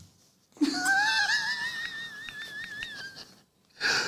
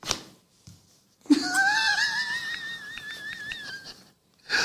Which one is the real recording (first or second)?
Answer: first